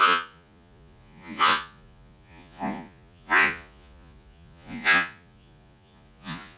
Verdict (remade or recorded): remade